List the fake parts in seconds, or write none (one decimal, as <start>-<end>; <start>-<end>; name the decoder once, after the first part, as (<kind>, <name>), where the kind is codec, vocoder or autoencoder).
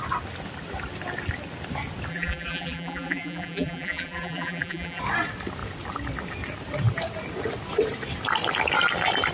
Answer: 2.1-5.0 (vocoder, BigVGAN v2)